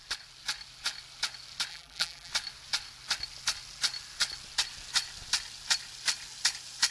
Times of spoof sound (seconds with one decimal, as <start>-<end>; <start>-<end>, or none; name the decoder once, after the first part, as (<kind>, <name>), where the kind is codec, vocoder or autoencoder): 1.7-2.3 (vocoder, BigVGAN v2)